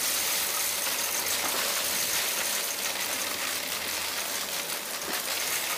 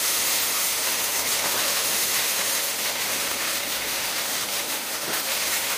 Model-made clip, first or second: second